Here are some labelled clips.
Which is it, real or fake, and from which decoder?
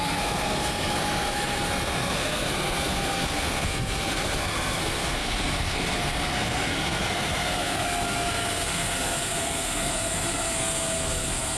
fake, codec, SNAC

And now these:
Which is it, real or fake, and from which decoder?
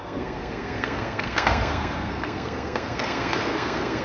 fake, codec, SNAC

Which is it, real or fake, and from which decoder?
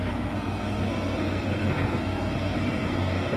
fake, codec, SNAC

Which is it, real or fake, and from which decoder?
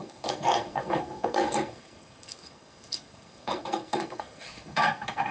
fake, codec, SNAC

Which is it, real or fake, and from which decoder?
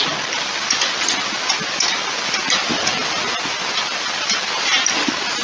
real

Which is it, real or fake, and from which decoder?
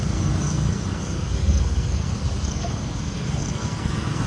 fake, codec, SNAC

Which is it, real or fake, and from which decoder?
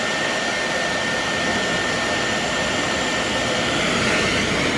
real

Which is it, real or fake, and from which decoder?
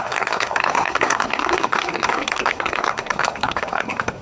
fake, codec, SNAC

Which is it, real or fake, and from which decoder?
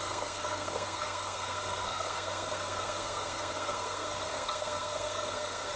fake, codec, SNAC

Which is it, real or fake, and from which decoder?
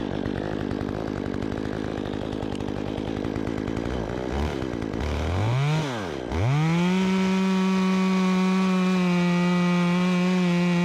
real